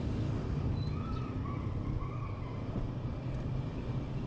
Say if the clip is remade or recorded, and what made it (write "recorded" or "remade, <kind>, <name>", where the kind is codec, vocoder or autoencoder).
recorded